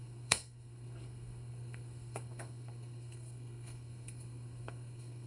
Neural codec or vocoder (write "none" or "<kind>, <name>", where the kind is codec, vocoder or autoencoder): codec, SNAC